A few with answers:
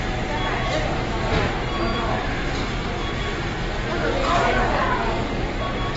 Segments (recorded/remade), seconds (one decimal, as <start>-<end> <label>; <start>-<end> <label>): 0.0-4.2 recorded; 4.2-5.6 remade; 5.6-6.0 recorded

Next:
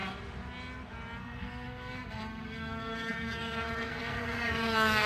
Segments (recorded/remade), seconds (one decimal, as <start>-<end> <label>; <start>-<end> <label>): 0.0-1.2 recorded; 1.2-5.1 remade

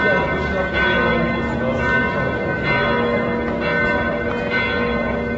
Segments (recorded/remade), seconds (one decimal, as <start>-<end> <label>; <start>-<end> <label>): 0.0-5.4 recorded

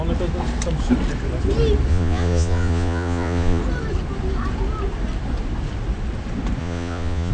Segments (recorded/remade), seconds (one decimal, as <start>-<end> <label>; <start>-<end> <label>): 0.0-1.9 recorded; 1.9-3.6 remade; 3.6-6.6 recorded; 6.6-7.3 remade

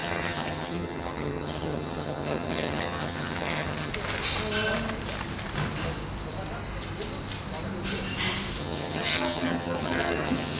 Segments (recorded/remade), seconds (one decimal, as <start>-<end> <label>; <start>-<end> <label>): 0.0-3.9 remade; 3.9-8.6 recorded; 8.6-10.6 remade

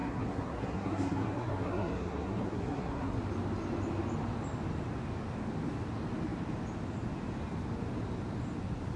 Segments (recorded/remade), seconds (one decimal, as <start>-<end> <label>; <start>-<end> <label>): 0.0-3.2 remade; 3.2-9.0 recorded

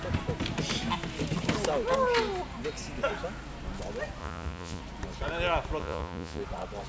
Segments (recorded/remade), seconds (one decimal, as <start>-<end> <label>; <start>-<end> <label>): 0.0-4.2 recorded; 4.2-4.8 remade; 4.8-5.8 recorded; 5.8-6.4 remade; 6.4-6.9 recorded

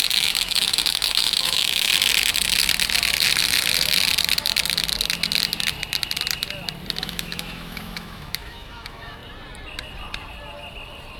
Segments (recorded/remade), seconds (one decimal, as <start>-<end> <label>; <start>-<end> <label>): 0.0-1.9 remade; 1.9-7.0 recorded; 7.0-9.2 remade; 9.2-11.2 recorded